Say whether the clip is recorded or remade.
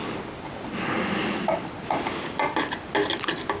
recorded